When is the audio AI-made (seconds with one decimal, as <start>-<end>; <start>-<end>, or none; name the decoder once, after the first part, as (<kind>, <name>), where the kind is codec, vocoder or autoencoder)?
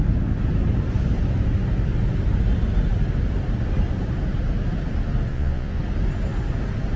5.3-5.8 (vocoder, Vocos)